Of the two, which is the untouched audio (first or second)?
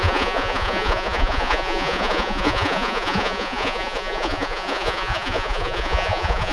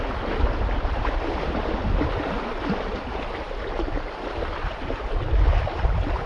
second